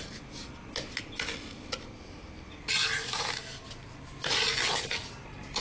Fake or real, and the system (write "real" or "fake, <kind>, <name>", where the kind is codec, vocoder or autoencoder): real